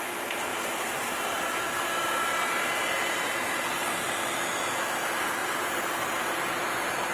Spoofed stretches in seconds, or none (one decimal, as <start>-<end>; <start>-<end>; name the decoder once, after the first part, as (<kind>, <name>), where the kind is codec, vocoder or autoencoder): 0.5-2.8 (vocoder, BigVGAN v2); 5.4-7.1